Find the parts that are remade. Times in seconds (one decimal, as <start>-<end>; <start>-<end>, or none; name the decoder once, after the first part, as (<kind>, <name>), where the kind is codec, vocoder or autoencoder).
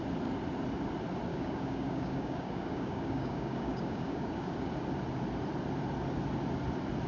1.3-4.7 (codec, DAC)